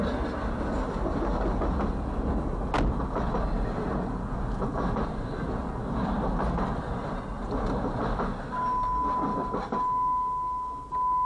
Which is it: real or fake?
real